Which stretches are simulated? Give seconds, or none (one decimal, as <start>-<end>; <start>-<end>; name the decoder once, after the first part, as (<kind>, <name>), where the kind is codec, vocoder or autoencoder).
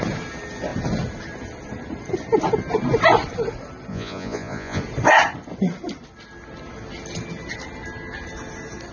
3.9-4.8 (vocoder, Vocos)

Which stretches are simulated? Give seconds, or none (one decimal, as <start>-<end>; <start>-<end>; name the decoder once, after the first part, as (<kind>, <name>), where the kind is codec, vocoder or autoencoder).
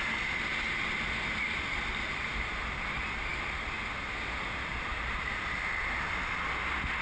none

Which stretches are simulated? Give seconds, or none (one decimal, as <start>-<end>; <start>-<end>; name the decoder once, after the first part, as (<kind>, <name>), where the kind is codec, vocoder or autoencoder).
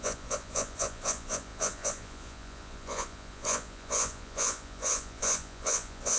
0.0-6.2 (vocoder, Vocos)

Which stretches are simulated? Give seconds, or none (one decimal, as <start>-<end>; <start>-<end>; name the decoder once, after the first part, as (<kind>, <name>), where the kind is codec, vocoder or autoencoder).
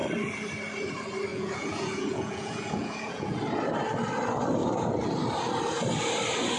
1.3-3.4 (vocoder, Vocos)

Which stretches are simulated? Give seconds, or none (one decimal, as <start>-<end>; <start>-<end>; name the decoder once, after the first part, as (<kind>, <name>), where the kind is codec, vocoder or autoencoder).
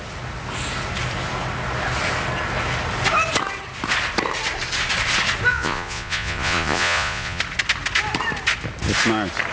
5.5-7.4 (vocoder, Vocos)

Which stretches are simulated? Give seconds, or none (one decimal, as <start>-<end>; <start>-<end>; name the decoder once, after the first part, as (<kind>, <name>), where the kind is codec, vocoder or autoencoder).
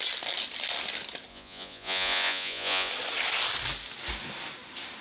1.3-2.9 (vocoder, Vocos)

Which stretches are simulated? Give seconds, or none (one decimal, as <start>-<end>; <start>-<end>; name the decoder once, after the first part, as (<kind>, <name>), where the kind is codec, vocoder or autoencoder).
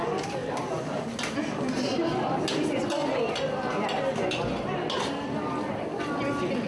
none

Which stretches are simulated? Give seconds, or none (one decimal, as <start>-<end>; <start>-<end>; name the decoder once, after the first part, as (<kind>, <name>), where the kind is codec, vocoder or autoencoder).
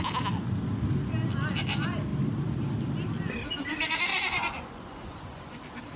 4.1-5.6 (vocoder, Vocos)